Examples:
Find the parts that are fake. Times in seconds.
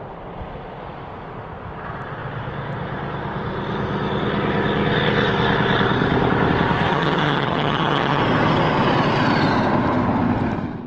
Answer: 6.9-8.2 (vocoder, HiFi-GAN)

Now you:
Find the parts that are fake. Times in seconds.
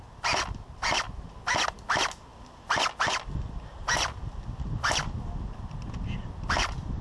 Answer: none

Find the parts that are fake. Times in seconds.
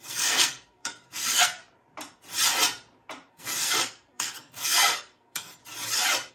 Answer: 0.0-1.6 (codec, SNAC); 3.3-5.6